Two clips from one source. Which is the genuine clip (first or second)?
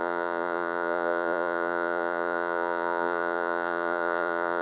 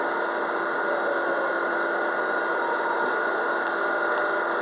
second